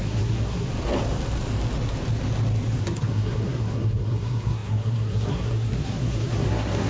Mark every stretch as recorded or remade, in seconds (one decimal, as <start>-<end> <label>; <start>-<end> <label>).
0.0-0.7 remade; 0.7-2.8 recorded; 2.8-6.9 remade